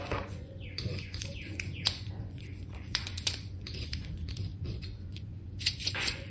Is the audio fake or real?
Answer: fake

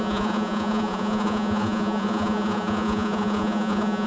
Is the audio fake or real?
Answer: fake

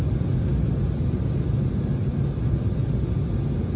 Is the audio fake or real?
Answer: real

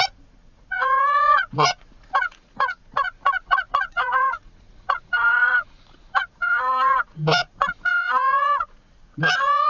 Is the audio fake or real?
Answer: fake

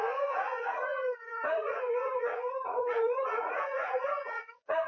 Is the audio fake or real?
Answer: fake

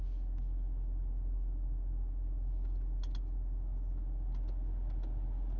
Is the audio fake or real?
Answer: real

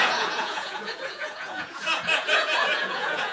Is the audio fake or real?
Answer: fake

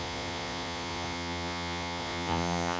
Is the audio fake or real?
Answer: fake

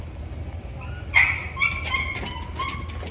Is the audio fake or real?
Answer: real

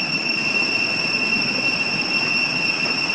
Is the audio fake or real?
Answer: real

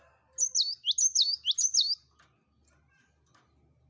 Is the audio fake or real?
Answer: real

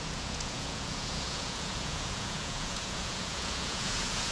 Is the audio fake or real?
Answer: fake